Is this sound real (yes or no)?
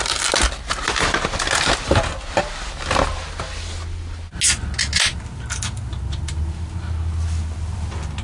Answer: yes